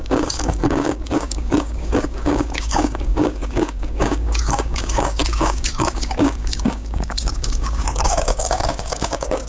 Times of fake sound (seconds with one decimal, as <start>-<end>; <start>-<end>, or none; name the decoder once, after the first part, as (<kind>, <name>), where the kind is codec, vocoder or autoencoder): 0.0-9.5 (codec, DAC)

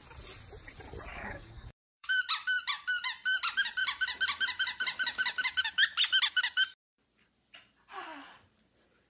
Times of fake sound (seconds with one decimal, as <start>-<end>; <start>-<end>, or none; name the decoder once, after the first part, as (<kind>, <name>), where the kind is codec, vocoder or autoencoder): 1.1-2.2 (codec, DAC)

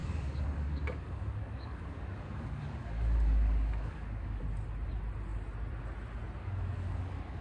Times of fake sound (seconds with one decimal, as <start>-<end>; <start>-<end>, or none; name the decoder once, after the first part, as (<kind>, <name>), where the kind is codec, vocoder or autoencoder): 0.0-4.4 (codec, DAC); 6.4-7.4

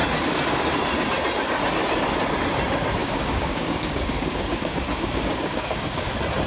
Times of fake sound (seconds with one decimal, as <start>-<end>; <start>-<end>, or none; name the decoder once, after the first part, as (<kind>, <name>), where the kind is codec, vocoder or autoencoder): 3.0-6.1 (codec, DAC)